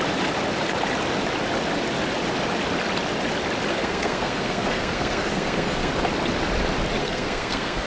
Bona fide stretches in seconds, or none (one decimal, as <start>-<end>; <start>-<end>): 0.0-3.7; 5.9-7.0